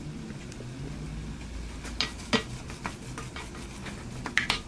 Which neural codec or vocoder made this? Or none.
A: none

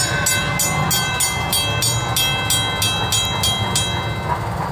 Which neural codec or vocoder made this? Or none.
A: none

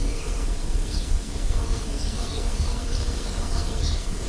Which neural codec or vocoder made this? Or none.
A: codec, SNAC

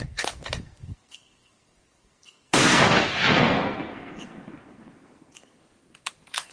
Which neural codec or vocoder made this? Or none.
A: codec, SNAC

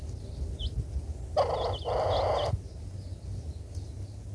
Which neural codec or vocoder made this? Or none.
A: none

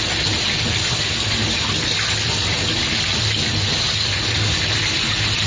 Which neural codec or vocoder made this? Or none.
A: none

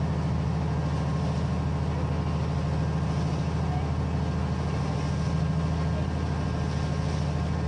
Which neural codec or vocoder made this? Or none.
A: none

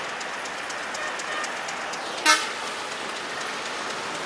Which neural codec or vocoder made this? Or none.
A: none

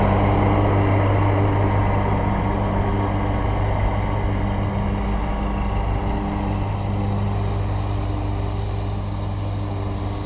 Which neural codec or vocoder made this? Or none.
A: none